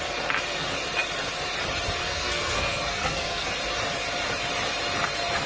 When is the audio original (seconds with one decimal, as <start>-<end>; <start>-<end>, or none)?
0.0-2.0; 3.5-5.5